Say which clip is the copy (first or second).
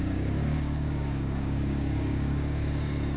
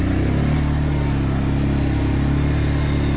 first